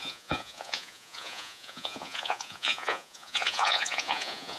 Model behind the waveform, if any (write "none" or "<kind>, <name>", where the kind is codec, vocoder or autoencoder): vocoder, Vocos